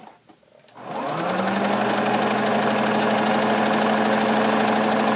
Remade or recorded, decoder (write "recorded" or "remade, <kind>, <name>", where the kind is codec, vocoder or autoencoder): recorded